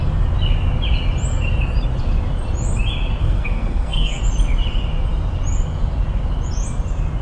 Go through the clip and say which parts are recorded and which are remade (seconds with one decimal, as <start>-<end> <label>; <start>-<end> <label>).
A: 0.0-3.2 recorded; 3.2-4.2 remade; 4.2-7.2 recorded